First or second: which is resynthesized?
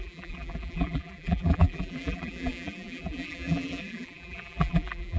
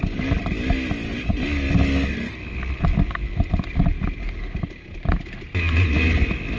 first